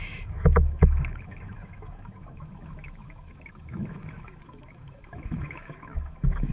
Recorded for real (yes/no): no